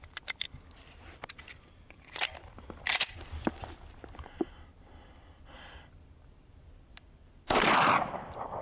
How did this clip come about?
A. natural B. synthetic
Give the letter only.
B